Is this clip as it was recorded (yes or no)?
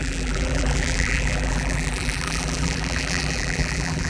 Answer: no